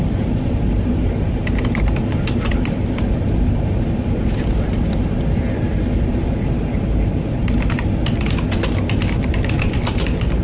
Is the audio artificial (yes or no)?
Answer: no